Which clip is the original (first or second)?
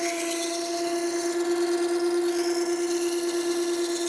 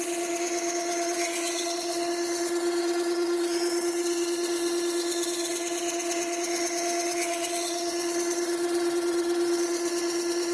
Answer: first